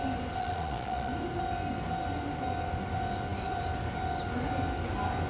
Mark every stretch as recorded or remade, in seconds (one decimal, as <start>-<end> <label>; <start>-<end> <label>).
0.0-0.4 recorded; 0.4-1.1 remade; 1.1-5.3 recorded